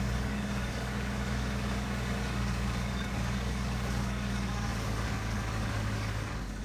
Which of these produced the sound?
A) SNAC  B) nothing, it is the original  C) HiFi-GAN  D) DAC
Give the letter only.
D